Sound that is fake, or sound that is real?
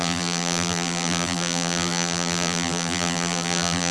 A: fake